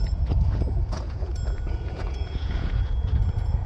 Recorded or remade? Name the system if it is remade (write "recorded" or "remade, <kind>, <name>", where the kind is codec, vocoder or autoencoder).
remade, vocoder, Vocos